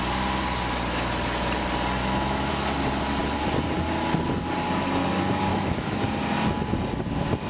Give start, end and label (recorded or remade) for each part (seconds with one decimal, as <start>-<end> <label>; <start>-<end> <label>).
0.0-2.0 recorded; 2.0-2.5 remade; 2.5-5.5 recorded; 5.5-6.0 remade; 6.0-7.5 recorded